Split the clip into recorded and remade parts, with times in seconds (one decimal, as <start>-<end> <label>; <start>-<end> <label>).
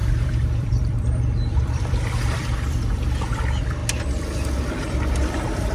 0.0-3.8 remade; 3.8-4.9 recorded; 4.9-5.7 remade